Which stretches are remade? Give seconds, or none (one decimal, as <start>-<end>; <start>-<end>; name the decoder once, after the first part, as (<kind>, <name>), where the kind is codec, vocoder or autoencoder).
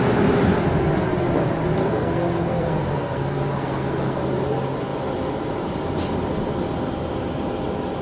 1.8-4.2 (codec, SNAC)